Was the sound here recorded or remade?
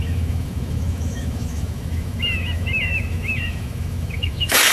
remade